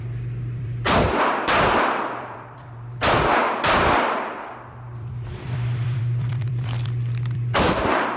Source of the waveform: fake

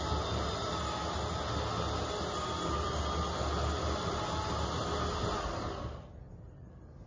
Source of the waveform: real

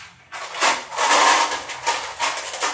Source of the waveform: real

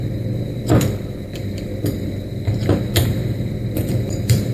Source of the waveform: fake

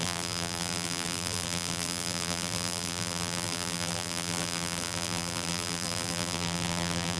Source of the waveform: fake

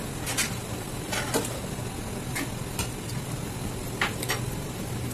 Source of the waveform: real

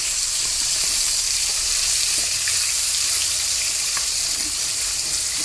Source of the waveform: fake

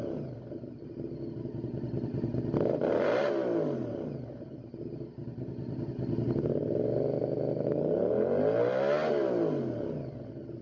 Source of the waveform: real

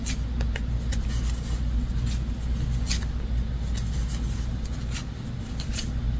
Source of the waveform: real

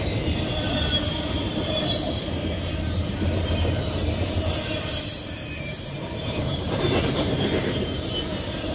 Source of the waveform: fake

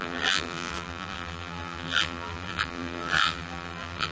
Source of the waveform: fake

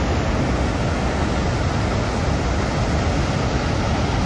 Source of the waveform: real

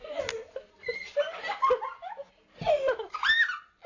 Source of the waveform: real